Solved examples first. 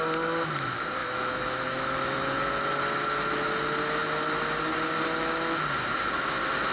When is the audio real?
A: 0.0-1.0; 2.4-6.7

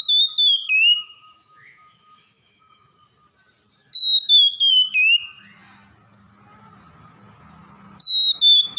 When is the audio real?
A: 0.0-0.6; 2.9-8.1

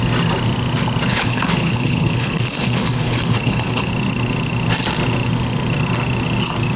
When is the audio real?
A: 0.0-1.1; 3.9-6.8

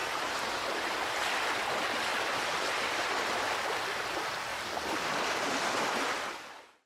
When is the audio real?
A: 0.8-4.5; 5.9-6.9